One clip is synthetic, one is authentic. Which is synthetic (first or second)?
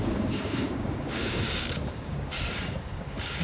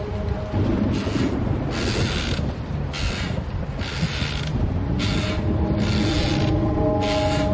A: first